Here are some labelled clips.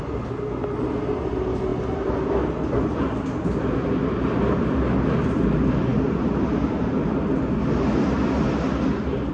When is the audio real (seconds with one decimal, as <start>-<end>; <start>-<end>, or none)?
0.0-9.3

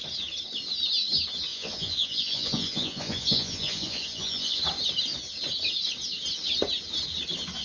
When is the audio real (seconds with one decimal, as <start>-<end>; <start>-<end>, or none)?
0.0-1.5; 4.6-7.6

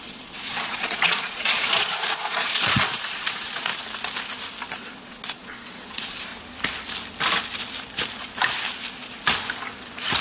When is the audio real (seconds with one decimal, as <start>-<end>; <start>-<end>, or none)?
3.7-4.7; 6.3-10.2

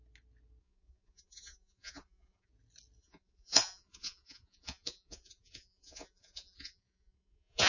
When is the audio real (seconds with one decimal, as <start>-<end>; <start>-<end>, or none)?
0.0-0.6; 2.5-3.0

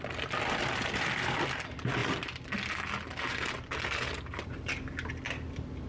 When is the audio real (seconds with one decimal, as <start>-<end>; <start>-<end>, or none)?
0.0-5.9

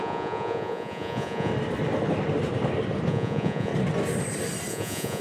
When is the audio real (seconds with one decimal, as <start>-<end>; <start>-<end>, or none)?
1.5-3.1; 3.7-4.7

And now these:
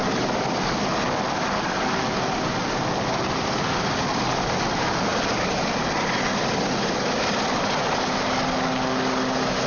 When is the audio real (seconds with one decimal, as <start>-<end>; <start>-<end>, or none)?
0.0-9.7

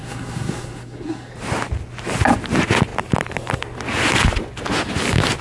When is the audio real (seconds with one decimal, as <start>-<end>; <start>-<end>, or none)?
1.3-5.4